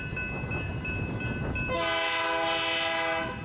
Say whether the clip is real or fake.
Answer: real